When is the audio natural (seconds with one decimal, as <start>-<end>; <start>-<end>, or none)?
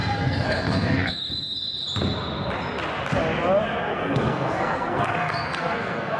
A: 1.3-3.9